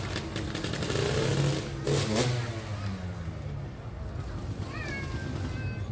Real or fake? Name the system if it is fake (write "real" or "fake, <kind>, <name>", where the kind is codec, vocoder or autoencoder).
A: real